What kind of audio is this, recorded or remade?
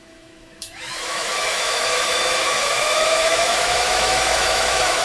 remade